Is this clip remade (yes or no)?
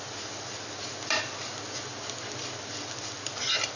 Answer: no